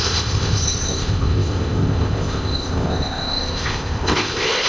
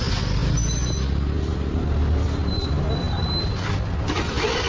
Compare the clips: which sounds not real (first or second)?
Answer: first